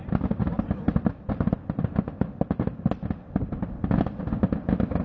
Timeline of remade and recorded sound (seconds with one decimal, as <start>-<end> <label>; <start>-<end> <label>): 0.0-0.4 recorded; 0.4-1.6 remade; 1.6-5.0 recorded